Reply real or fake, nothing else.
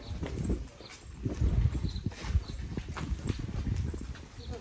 real